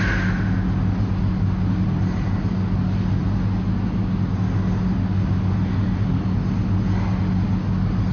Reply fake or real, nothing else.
real